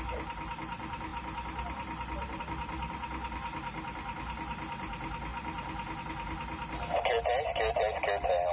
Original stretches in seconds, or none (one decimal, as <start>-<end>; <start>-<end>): 0.0-8.5